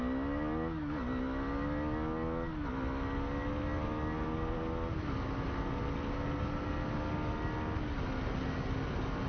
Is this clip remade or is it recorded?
recorded